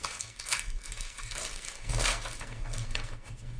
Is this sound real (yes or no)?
no